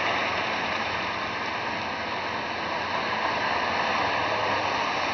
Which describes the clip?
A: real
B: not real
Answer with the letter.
A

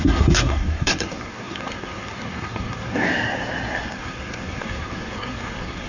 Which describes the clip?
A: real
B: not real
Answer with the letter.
B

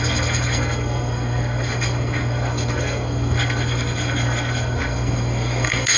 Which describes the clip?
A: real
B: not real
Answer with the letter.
B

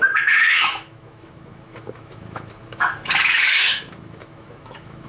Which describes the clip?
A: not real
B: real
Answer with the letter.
A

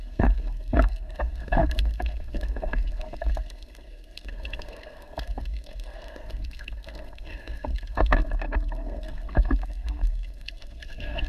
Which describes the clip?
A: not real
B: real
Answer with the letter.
A